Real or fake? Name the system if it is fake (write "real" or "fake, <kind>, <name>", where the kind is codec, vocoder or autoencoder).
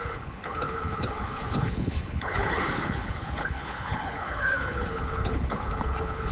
fake, codec, HILCodec